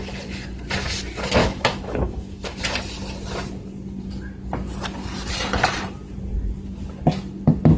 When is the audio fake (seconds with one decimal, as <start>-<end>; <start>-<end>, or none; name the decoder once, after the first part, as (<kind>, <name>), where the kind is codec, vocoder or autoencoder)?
1.4-2.6 (autoencoder, DAC-VAE)

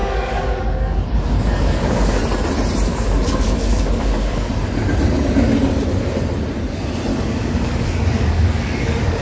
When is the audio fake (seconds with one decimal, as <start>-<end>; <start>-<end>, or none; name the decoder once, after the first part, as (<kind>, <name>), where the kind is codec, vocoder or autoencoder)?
0.0-2.2 (codec, DAC); 2.9-4.5; 7.1-9.2

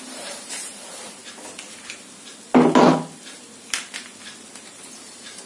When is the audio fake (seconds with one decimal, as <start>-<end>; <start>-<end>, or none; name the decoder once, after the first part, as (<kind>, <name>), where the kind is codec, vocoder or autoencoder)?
0.0-1.2 (vocoder, BigVGAN v2); 4.5-5.5

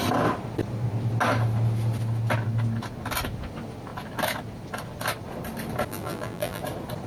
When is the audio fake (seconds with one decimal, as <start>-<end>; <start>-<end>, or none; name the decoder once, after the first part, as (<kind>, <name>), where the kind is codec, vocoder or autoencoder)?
5.9-6.6 (vocoder, BigVGAN v2)

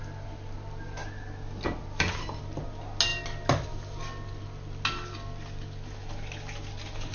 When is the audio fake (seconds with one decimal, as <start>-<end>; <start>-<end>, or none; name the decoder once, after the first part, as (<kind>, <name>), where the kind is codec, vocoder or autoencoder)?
none

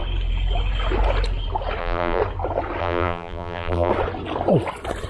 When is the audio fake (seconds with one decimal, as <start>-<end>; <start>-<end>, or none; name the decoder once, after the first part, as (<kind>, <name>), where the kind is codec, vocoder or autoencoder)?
1.8-2.2 (vocoder, BigVGAN v2); 2.8-3.9

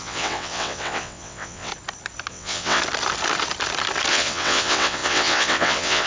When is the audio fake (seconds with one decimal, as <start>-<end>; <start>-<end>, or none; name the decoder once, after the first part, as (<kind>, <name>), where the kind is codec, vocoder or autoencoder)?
0.0-1.7 (vocoder, WaveNeXt); 2.3-2.8; 4.1-6.1